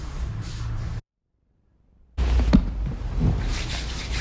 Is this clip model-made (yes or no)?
yes